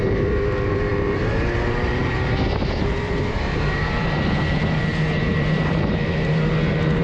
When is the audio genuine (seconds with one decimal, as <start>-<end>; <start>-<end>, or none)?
none